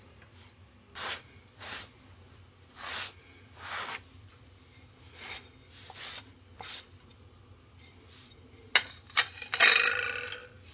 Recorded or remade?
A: recorded